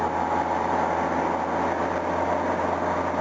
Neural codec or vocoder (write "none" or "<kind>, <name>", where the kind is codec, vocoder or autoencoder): none